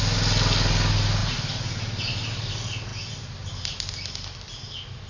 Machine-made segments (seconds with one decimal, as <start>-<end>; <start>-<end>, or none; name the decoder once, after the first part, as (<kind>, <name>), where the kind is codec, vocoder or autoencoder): none